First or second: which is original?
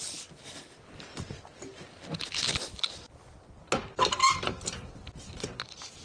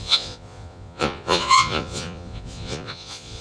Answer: first